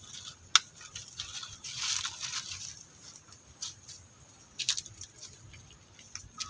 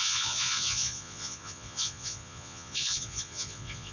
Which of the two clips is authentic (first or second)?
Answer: first